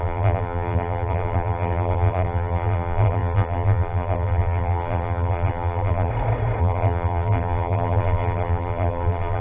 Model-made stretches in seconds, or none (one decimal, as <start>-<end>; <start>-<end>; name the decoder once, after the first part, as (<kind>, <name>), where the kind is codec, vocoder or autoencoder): 0.0-6.1 (vocoder, BigVGAN v2); 6.6-9.4